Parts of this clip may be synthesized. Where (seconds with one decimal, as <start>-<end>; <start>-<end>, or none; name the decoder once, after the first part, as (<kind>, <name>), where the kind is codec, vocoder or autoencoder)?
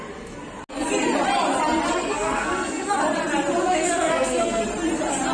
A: 1.9-3.0 (codec, SNAC); 3.6-4.6